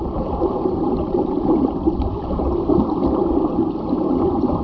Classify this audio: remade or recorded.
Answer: remade